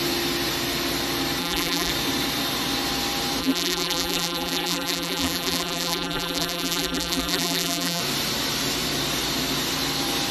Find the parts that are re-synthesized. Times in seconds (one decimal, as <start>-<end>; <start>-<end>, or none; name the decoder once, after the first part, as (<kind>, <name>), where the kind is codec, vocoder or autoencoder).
1.4-1.9 (vocoder, BigVGAN v2); 3.4-8.0